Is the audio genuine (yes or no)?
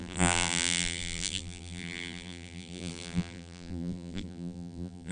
no